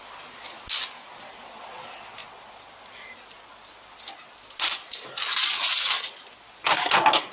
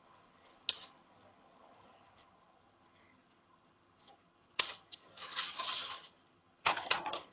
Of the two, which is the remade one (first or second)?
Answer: second